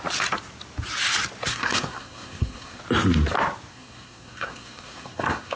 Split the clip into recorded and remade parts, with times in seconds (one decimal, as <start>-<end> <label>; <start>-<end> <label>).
0.0-1.5 recorded; 1.5-2.8 remade; 2.8-3.7 recorded; 3.7-5.6 remade